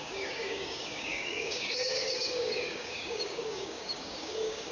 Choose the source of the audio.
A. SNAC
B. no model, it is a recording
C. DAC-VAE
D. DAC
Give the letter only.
D